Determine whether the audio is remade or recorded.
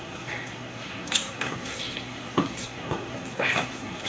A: remade